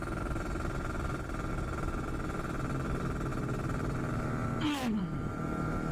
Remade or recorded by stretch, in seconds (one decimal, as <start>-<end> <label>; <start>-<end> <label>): 0.0-3.3 recorded; 3.3-5.9 remade